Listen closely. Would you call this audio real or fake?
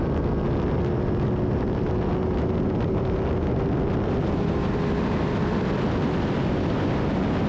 real